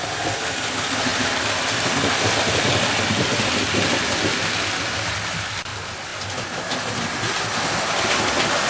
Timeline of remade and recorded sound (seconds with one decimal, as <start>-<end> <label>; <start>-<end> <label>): 0.0-8.7 recorded